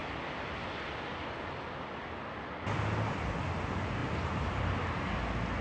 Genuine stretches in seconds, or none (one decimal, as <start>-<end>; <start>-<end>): 0.0-4.0; 4.6-5.6